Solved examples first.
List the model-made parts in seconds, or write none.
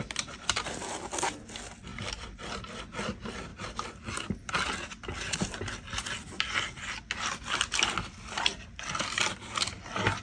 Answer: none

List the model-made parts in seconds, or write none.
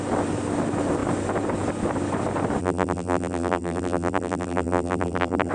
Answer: 2.6-5.5 (vocoder, BigVGAN v2)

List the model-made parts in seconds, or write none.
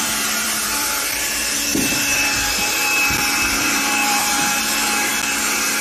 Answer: 0.0-5.1 (vocoder, BigVGAN v2)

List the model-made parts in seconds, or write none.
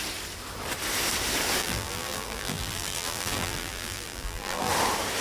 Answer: 1.6-4.7 (vocoder, BigVGAN v2)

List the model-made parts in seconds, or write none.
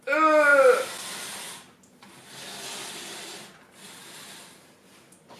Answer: none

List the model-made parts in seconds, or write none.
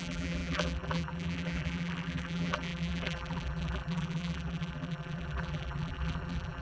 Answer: 0.0-6.6 (vocoder, BigVGAN v2)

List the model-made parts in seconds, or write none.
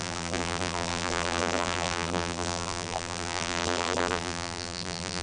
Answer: 0.0-5.2 (vocoder, BigVGAN v2)